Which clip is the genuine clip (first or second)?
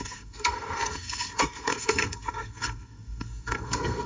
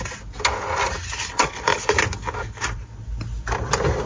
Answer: second